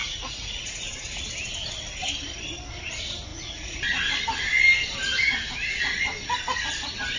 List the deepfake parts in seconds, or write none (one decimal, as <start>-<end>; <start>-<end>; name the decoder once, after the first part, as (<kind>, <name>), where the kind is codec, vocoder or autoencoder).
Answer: 0.0-1.3 (vocoder, Vocos); 3.3-3.8